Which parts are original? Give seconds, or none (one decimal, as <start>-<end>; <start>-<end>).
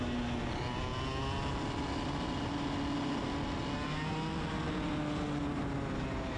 0.0-6.4